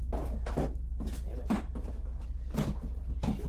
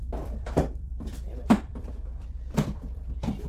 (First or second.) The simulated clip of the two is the second